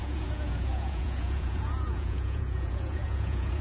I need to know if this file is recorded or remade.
remade